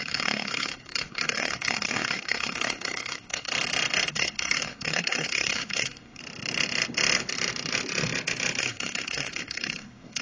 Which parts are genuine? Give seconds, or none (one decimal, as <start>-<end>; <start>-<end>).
3.5-4.1; 6.2-8.6